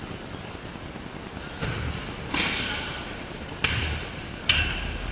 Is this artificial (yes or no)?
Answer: no